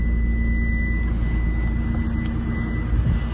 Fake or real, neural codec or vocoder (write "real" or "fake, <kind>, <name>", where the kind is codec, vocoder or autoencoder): real